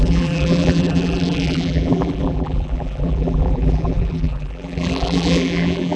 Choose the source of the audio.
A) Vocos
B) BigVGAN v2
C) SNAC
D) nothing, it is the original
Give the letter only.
B